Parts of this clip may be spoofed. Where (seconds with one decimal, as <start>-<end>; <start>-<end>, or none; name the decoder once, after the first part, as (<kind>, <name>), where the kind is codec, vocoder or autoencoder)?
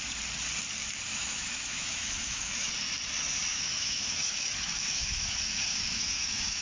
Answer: 1.1-2.7 (autoencoder, DAC-VAE); 3.5-6.6